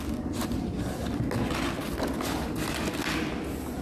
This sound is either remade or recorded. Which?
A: recorded